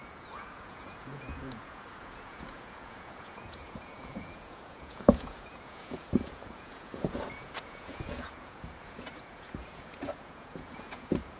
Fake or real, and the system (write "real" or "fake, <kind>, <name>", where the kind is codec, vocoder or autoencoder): fake, vocoder, Vocos